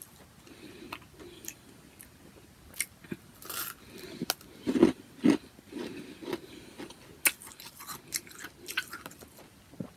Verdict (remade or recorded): recorded